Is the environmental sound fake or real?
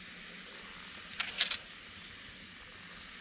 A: real